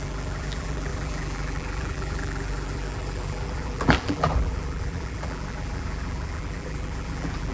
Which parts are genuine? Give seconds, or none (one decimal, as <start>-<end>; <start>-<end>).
none